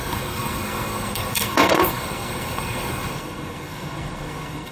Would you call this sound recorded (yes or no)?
no